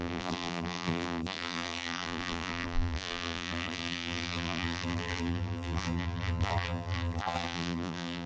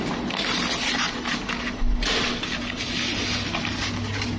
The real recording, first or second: second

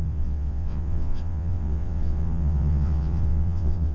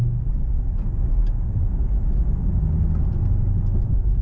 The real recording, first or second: second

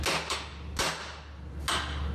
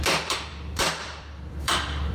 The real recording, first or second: first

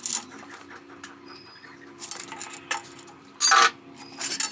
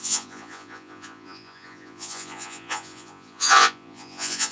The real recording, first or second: first